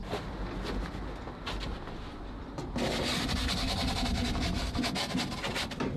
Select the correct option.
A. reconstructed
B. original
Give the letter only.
B